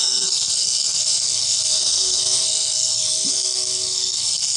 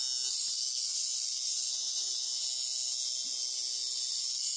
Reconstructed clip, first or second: first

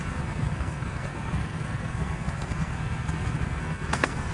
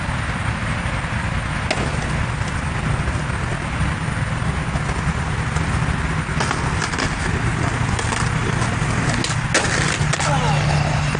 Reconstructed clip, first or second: first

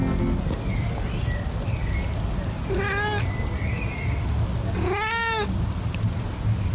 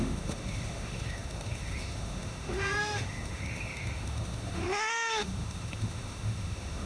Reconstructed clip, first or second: second